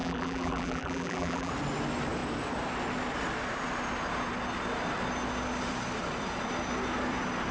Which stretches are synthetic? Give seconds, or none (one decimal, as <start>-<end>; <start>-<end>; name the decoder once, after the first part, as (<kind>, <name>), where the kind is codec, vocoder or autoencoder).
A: 0.0-1.5 (vocoder, BigVGAN v2)